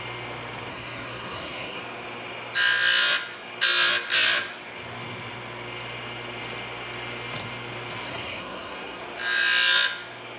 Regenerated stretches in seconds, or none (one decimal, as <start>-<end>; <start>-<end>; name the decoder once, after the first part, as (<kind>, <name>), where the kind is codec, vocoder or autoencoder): 0.7-1.8 (codec, SNAC); 8.1-9.0